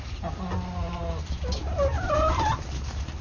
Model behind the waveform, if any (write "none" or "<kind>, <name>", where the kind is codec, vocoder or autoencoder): none